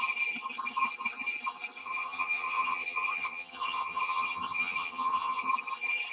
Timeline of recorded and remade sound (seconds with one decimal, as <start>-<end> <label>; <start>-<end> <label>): 0.0-1.8 recorded; 1.8-5.5 remade; 5.5-6.1 recorded